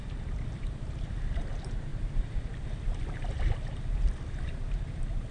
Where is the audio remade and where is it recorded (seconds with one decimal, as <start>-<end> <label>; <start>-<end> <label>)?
0.0-5.3 recorded